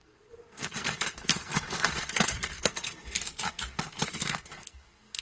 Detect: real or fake fake